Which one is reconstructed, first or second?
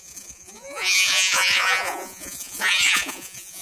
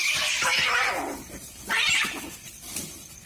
first